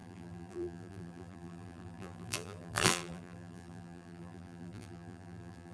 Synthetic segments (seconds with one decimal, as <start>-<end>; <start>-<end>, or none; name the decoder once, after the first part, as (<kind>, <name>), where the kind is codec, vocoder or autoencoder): 0.0-5.7 (vocoder, BigVGAN v2)